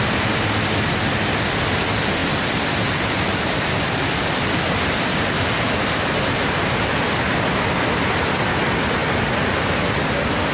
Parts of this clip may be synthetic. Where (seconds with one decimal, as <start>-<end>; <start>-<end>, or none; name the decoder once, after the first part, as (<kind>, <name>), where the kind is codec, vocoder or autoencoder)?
none